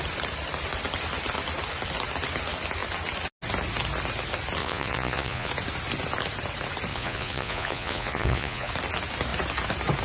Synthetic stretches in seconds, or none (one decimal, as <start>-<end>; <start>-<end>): 4.6-5.5; 6.9-8.7